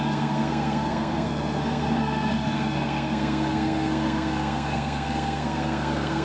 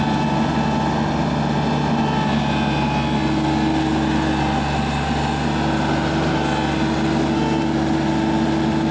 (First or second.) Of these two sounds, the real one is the second